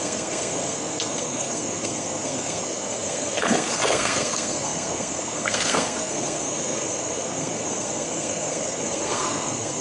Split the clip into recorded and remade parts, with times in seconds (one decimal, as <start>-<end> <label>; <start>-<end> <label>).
0.0-9.8 remade